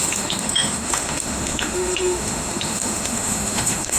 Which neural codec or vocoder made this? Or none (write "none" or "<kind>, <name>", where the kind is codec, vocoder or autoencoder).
autoencoder, DAC-VAE